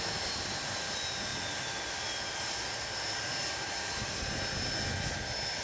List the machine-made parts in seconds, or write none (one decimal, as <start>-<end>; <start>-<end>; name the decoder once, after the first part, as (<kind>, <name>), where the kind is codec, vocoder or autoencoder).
none